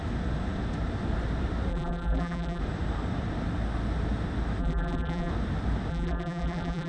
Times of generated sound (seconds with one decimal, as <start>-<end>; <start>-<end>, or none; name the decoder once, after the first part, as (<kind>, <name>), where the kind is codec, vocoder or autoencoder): 1.7-2.6 (vocoder, BigVGAN v2); 4.6-5.3; 5.9-6.9